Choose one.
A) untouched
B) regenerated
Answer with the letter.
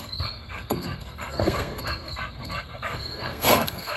B